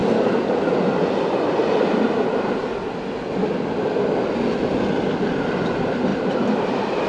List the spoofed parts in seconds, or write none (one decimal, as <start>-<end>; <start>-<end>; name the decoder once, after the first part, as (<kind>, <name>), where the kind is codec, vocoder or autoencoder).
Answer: 1.6-2.6 (vocoder, BigVGAN v2); 6.1-7.1

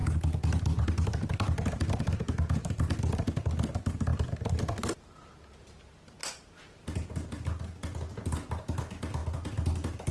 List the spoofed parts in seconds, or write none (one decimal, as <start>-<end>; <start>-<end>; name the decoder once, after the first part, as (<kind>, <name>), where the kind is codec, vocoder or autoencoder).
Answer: none

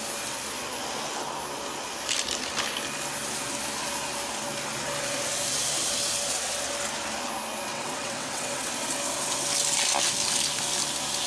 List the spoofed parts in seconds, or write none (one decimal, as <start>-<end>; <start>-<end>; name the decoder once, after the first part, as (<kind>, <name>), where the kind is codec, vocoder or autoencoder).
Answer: 7.7-8.7 (vocoder, WaveNeXt)

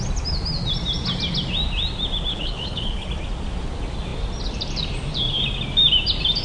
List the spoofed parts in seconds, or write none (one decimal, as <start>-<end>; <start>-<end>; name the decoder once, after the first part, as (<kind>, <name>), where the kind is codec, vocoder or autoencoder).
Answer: 2.3-3.1 (codec, HILCodec)